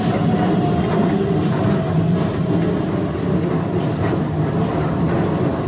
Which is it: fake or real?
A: real